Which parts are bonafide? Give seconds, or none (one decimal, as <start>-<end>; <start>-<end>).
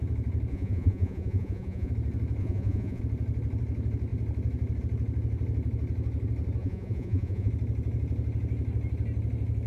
0.0-0.5; 1.9-2.4; 3.0-6.6; 7.5-9.7